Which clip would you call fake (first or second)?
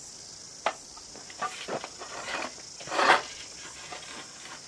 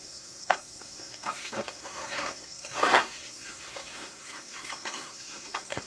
second